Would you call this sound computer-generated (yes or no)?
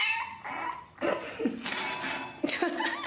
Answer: no